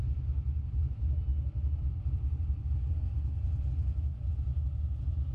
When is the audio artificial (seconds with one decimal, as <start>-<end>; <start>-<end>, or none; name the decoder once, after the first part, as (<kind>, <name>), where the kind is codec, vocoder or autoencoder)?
none